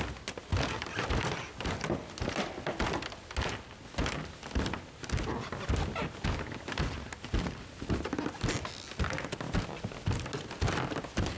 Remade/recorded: recorded